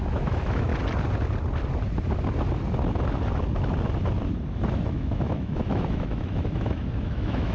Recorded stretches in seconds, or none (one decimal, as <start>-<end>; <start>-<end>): 0.7-4.8